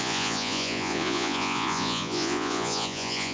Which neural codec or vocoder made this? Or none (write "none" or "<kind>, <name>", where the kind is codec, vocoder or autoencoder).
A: vocoder, Vocos